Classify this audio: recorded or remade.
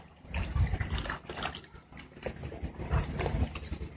recorded